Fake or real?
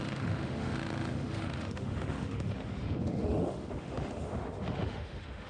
fake